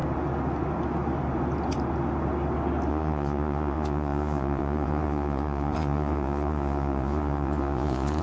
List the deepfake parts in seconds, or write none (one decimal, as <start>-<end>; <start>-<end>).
2.9-8.2